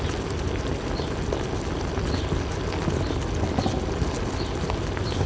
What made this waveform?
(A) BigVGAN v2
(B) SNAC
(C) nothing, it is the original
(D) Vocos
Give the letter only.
C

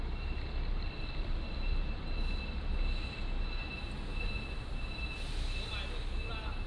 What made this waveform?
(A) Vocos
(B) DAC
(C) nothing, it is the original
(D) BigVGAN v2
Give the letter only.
C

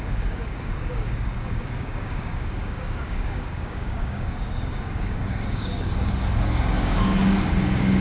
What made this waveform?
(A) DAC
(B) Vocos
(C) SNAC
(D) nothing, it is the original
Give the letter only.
A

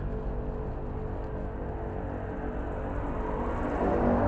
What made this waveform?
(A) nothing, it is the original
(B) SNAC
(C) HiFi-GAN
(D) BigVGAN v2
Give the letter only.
A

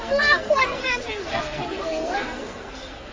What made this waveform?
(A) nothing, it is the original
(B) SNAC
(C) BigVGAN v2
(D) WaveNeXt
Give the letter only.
B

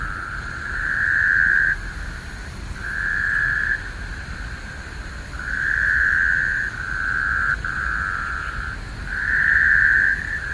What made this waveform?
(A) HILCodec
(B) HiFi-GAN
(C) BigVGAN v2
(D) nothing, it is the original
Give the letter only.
C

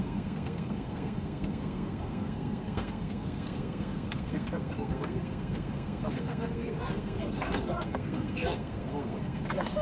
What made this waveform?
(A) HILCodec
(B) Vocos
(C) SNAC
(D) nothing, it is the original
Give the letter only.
C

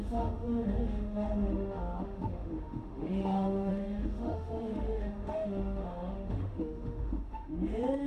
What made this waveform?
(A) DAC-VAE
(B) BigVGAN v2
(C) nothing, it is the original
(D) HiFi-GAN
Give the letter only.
A